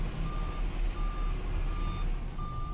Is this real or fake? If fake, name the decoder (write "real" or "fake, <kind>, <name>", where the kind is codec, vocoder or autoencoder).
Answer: real